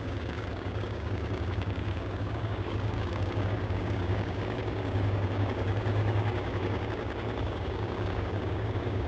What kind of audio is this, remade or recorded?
remade